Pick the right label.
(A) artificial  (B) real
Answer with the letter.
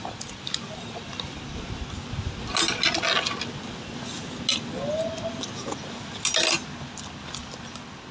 B